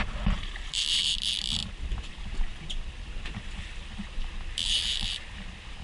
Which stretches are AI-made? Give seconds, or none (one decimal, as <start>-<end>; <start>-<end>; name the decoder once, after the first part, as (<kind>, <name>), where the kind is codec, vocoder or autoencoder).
0.0-1.6 (vocoder, BigVGAN v2); 2.1-5.8